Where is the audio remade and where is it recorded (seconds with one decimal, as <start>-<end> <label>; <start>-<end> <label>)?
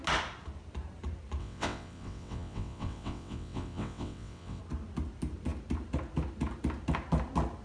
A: 0.0-1.4 recorded; 1.4-4.6 remade; 4.6-7.6 recorded